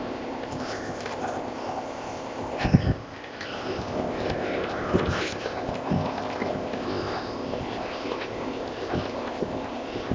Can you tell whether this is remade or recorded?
remade